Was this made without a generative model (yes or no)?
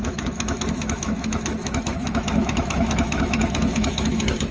no